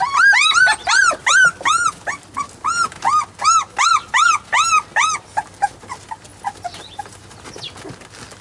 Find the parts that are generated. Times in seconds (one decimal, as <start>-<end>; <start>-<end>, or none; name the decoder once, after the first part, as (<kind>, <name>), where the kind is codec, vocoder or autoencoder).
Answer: none